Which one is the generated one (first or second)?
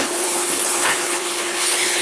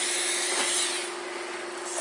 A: first